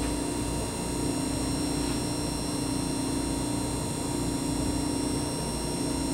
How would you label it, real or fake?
real